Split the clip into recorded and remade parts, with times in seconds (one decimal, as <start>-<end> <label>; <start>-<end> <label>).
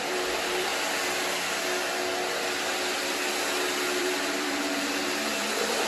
0.0-0.7 remade; 0.7-4.0 recorded; 4.0-5.9 remade